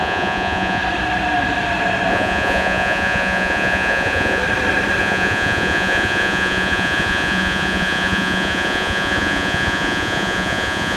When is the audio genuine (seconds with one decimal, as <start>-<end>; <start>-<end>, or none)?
0.8-2.1; 4.4-5.0